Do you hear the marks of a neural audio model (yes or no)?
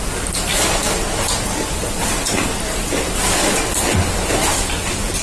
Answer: no